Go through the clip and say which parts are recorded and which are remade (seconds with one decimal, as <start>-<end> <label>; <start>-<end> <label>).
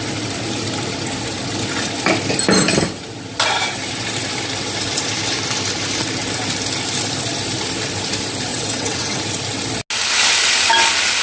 0.0-8.5 recorded; 8.5-9.2 remade; 9.2-11.2 recorded